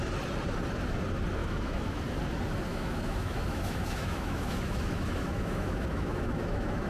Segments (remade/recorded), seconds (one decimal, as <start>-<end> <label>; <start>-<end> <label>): 0.0-1.4 recorded; 1.4-2.0 remade; 2.0-2.7 recorded; 2.7-6.9 remade